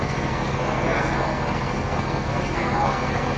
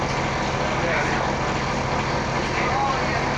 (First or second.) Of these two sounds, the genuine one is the second